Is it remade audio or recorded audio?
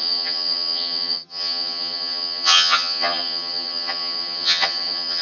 remade